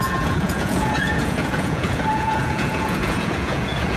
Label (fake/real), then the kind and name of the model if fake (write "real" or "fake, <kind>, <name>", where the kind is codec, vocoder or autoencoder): fake, vocoder, Vocos